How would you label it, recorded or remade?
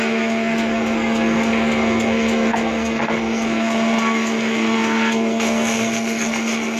remade